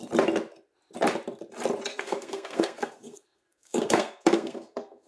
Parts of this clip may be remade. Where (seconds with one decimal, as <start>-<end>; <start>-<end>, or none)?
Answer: 1.9-5.1